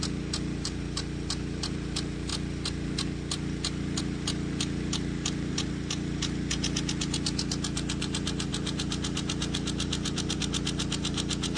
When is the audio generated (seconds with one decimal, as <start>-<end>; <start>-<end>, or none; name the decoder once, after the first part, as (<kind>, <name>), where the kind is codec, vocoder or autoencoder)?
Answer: 0.0-2.3 (vocoder, BigVGAN v2); 4.0-11.6

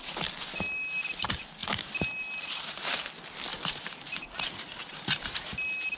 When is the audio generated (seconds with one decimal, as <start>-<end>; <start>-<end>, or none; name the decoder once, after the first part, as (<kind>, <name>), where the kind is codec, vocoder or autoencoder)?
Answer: 3.5-4.3 (vocoder, BigVGAN v2); 4.8-5.5